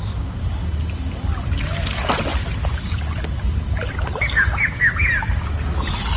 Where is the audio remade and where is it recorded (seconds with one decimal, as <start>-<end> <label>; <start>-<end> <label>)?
0.0-6.2 recorded